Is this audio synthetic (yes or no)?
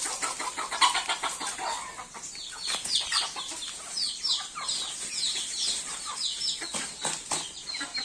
no